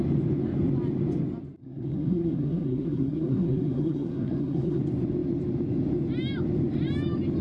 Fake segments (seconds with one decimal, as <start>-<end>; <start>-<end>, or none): 1.6-4.8